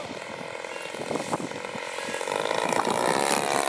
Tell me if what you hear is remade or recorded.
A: recorded